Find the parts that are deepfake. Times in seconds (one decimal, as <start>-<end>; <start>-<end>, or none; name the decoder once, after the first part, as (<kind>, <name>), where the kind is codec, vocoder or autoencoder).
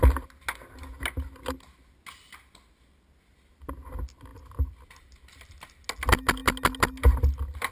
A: none